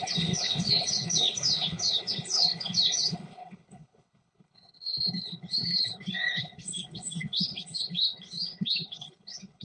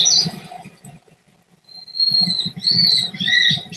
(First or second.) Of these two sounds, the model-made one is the first